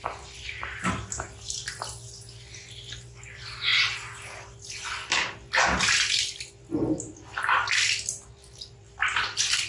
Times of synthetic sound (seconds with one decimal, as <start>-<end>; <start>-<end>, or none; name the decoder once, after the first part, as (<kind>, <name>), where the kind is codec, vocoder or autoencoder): none